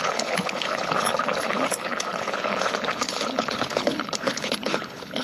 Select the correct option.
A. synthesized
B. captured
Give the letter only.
A